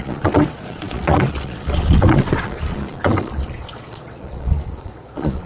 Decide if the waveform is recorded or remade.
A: remade